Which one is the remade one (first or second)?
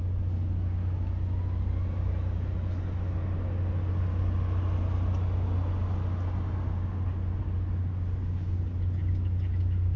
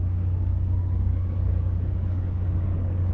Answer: second